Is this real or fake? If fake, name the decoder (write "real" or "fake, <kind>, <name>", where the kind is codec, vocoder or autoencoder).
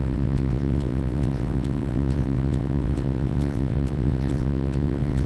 fake, vocoder, WaveNeXt